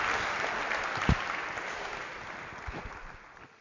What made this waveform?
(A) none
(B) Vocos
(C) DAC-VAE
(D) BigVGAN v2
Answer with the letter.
A